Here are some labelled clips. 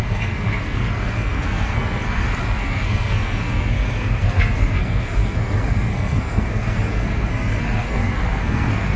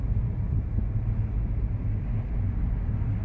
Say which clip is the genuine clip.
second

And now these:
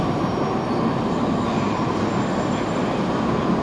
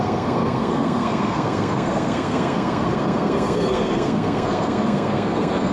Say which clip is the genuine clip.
first